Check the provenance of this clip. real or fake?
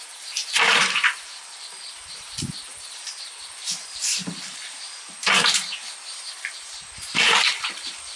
fake